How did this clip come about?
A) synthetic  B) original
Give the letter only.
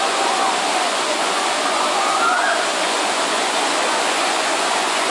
A